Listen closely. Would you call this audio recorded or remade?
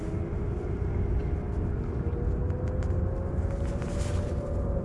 recorded